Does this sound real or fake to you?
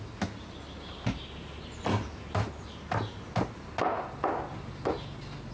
real